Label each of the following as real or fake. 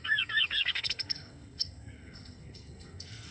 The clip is fake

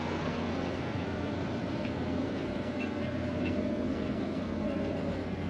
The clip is fake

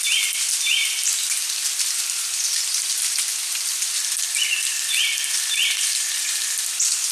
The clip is real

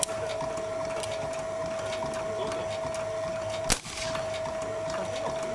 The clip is real